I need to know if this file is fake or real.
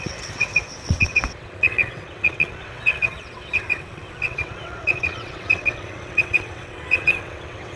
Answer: fake